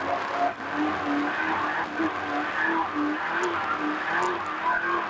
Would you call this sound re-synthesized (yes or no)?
no